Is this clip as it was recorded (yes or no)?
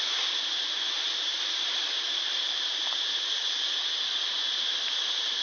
no